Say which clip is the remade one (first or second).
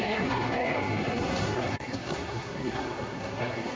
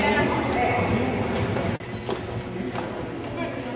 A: first